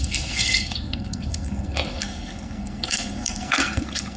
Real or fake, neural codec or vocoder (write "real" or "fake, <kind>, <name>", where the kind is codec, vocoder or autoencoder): fake, codec, SNAC